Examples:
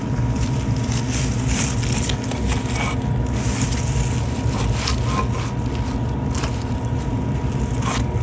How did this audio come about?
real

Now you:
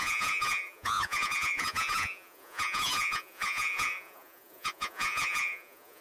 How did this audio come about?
fake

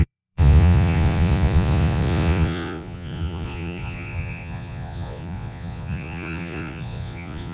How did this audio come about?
fake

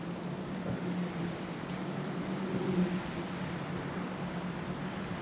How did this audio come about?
fake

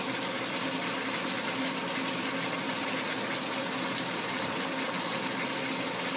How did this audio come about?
real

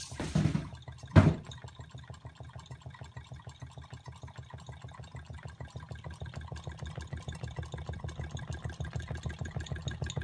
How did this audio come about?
real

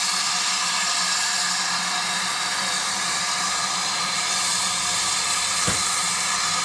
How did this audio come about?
real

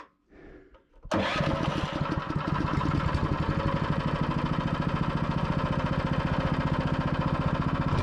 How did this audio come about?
real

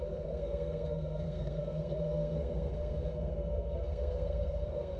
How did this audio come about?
fake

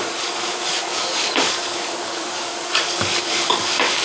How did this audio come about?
fake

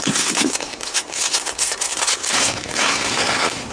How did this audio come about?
fake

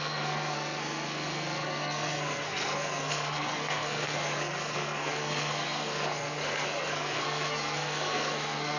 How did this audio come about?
fake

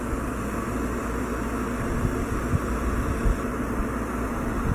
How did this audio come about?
real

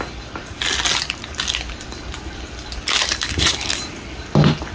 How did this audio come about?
real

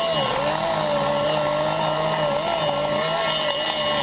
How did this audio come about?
real